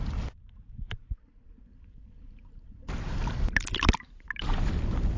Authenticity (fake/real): real